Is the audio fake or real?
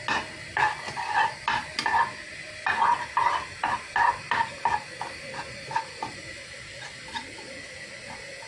real